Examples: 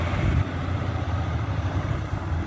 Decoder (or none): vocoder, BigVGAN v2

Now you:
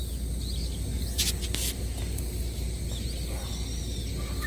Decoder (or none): none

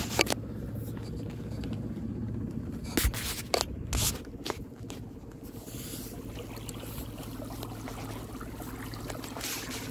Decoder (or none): none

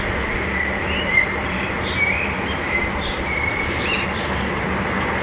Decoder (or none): vocoder, BigVGAN v2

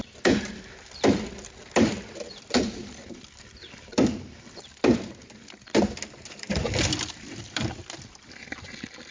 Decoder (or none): none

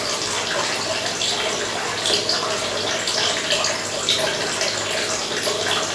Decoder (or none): none